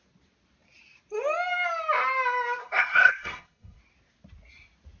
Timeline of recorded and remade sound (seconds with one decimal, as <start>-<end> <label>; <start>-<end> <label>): 0.0-2.6 recorded; 2.6-3.8 remade; 3.8-5.0 recorded